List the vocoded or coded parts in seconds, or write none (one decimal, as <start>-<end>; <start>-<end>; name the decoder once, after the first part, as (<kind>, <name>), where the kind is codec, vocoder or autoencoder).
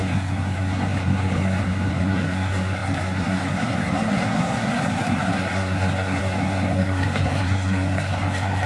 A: 0.0-8.7 (codec, SNAC)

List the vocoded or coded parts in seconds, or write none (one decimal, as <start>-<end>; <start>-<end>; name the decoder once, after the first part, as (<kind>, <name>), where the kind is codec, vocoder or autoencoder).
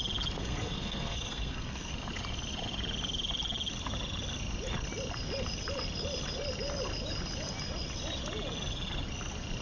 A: 0.4-1.9 (codec, SNAC)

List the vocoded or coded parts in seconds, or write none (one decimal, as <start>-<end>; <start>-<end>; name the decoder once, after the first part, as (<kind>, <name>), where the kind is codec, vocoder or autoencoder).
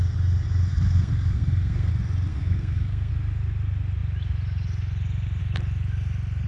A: 0.7-1.9 (codec, SNAC); 2.3-3.1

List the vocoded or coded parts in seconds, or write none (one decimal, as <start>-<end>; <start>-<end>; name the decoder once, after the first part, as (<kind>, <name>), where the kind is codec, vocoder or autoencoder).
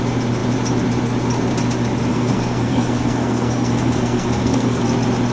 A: 2.1-4.8 (codec, SNAC)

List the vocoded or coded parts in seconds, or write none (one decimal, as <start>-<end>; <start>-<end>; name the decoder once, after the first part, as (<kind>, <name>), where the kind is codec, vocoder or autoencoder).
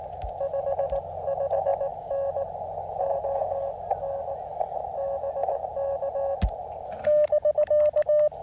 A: none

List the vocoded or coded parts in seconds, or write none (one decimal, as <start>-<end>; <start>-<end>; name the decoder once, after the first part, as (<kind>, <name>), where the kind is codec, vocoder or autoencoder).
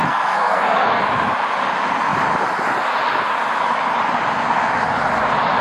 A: 0.0-1.0 (codec, SNAC)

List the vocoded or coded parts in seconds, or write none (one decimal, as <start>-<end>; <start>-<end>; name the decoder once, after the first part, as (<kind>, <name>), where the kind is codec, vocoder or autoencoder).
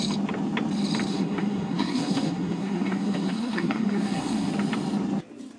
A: 1.1-4.5 (codec, SNAC)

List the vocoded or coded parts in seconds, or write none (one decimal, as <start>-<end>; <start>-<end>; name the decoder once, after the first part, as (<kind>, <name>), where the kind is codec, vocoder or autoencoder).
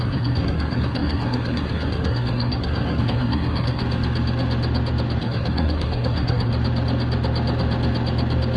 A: 0.0-3.8 (codec, SNAC); 5.2-6.5